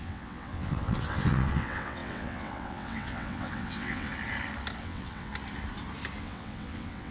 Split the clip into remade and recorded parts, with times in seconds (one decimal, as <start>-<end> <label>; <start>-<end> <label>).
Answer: 0.0-4.1 remade; 4.1-4.8 recorded; 4.8-5.3 remade; 5.3-6.2 recorded; 6.2-7.1 remade